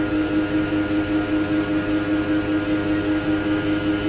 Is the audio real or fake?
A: real